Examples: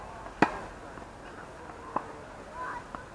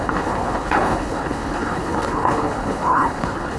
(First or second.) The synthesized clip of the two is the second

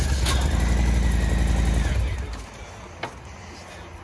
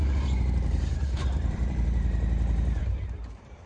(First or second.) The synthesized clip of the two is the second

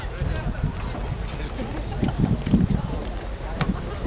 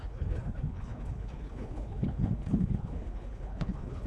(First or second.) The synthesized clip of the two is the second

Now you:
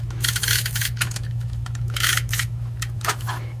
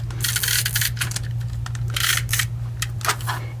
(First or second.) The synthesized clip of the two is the first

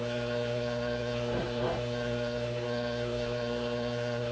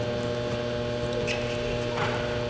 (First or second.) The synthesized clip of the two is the first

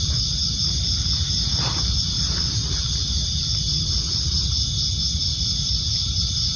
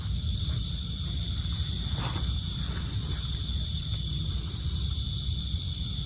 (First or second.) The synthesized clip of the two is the first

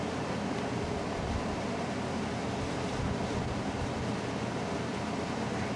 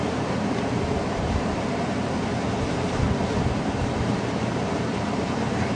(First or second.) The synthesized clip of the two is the second